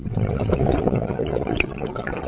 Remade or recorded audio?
remade